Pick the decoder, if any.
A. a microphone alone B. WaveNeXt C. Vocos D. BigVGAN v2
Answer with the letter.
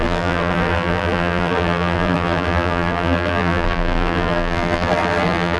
D